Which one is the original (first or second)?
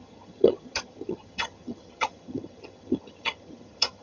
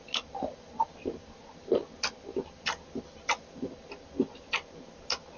second